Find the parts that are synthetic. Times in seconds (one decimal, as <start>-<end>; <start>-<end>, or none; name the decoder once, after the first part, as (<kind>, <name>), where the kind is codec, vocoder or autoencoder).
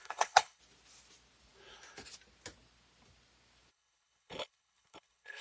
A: 0.0-0.6 (codec, HILCodec); 3.7-5.4